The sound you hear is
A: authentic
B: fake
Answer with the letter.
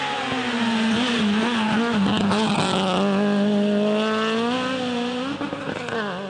A